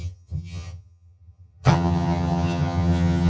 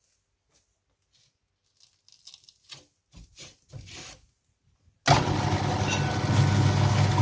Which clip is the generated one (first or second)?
first